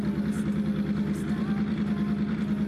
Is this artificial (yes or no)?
no